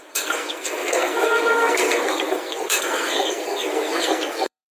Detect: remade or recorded remade